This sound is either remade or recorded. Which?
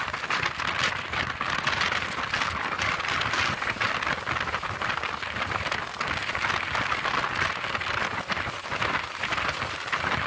recorded